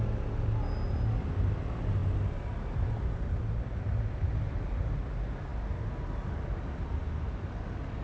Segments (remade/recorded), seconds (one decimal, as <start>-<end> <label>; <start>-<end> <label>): 0.0-8.0 recorded